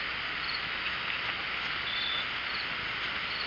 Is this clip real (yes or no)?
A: yes